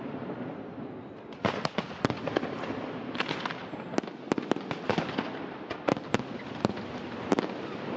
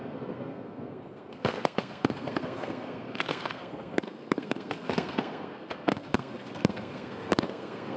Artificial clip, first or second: second